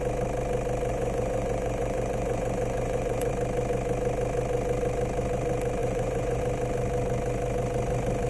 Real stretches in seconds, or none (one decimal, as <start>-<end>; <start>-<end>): 0.0-0.9; 3.3-5.8; 6.4-8.3